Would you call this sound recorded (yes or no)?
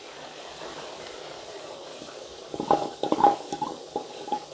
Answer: no